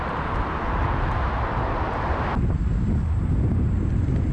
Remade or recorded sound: recorded